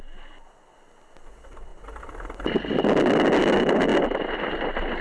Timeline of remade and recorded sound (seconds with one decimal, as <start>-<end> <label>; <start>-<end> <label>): 0.0-5.0 recorded